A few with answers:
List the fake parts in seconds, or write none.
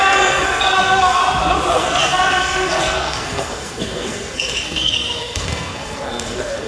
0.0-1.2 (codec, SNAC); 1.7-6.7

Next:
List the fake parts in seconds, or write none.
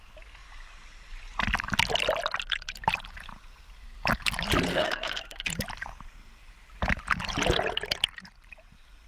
4.7-5.5 (codec, SNAC)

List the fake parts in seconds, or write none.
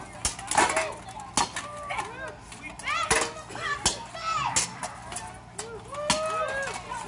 none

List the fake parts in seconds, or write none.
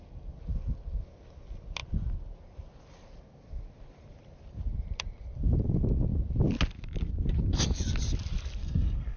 8.6-9.2 (codec, SNAC)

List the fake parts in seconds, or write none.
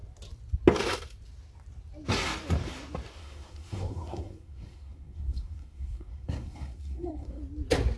3.2-7.4 (codec, SNAC)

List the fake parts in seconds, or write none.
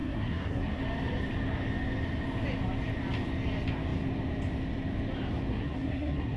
0.0-0.8 (codec, SNAC); 5.5-6.4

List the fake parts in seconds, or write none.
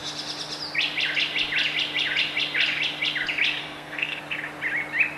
3.6-4.2 (codec, SNAC)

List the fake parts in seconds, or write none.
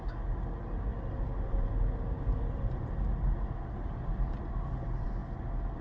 none